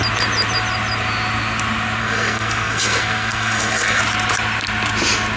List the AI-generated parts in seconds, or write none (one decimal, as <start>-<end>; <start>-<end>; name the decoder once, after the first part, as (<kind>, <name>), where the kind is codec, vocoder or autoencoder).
2.0-4.0 (codec, SNAC)